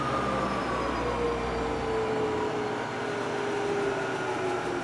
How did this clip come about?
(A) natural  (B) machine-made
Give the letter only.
A